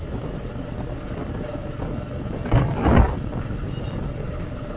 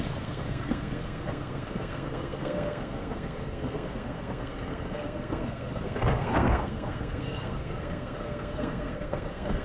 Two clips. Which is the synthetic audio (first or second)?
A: second